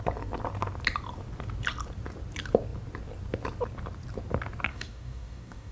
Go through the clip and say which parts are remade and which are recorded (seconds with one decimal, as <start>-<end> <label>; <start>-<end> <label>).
0.0-4.7 recorded; 4.7-5.7 remade